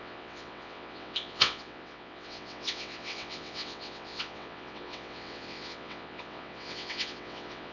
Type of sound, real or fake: fake